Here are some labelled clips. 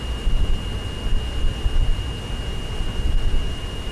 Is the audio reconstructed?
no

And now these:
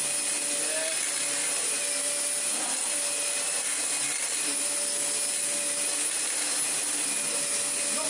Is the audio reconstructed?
no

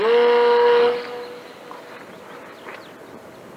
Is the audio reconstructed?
no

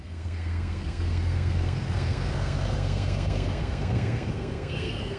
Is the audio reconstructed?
yes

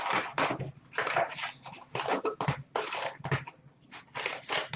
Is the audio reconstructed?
yes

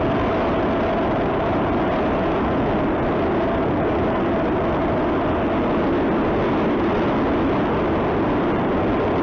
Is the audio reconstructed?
no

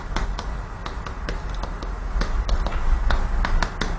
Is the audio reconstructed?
no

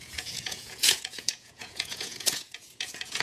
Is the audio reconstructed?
yes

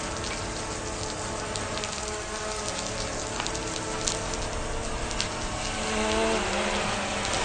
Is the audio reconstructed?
no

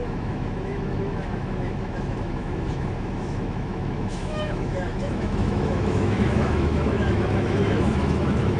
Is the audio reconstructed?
yes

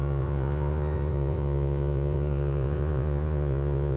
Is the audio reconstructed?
yes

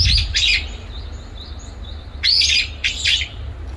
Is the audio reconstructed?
no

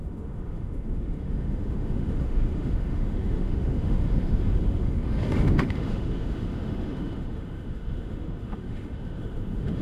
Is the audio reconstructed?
yes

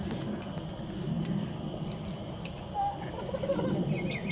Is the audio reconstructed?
no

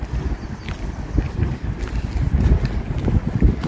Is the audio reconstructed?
no